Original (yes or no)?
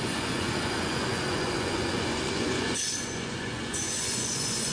no